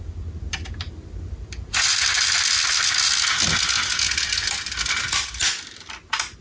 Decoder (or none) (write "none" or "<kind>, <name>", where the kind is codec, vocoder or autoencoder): none